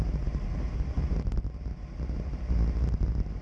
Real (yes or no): no